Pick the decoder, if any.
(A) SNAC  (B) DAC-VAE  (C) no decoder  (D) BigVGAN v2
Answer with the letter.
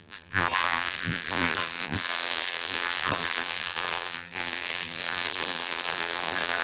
D